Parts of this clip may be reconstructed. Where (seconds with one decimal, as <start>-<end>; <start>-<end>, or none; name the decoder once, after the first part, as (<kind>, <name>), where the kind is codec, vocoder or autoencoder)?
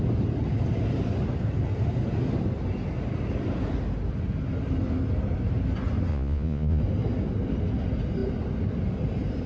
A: 6.1-6.8 (vocoder, Vocos)